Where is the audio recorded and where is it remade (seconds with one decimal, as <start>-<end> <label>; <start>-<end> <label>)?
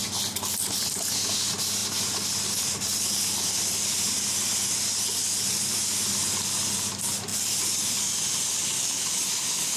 0.0-9.8 recorded